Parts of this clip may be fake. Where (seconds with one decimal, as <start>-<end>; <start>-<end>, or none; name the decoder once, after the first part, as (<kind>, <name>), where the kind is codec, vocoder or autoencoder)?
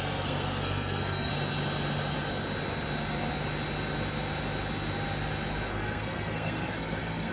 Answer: 0.0-1.3 (codec, SNAC); 5.7-7.3